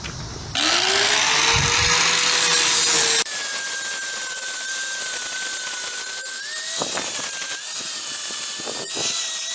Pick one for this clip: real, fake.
real